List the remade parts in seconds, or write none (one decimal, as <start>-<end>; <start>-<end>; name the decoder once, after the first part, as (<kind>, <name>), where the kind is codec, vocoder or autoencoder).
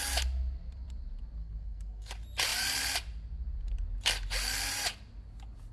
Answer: 1.4-2.1 (codec, SNAC)